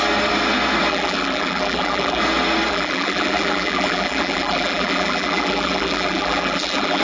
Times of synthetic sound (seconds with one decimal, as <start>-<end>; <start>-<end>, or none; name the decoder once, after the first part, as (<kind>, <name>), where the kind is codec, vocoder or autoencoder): 0.9-2.2 (vocoder, BigVGAN v2); 2.7-7.0